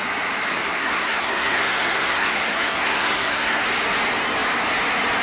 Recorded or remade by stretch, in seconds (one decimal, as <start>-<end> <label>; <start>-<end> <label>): 0.0-0.5 recorded; 0.5-3.6 remade; 3.6-5.2 recorded